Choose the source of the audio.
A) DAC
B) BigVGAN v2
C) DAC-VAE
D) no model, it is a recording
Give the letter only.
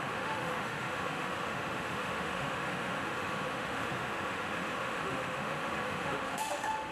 C